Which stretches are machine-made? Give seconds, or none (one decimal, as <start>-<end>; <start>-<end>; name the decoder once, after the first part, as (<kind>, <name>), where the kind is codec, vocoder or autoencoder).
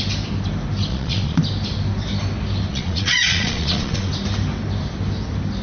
0.9-1.4 (vocoder, Vocos); 2.7-4.1